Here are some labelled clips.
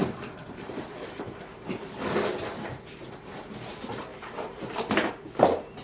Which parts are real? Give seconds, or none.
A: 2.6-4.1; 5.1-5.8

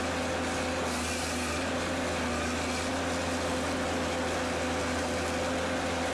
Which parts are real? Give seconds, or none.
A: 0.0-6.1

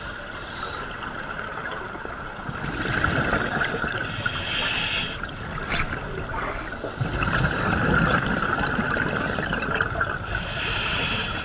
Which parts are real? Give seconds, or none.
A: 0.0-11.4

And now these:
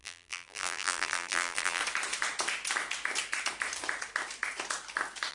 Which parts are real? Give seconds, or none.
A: 1.8-5.3

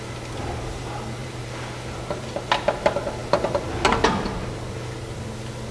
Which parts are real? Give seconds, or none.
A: 0.0-1.2; 2.6-5.7